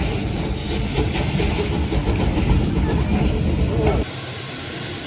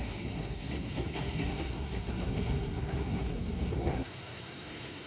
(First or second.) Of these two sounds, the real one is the first